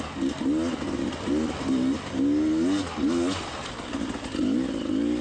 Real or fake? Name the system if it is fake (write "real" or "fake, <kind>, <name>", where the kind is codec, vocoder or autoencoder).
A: real